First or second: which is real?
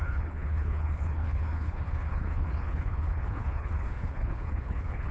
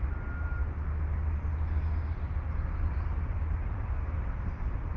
second